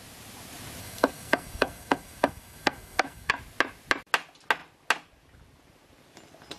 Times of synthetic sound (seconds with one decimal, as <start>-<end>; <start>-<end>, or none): 0.8-3.4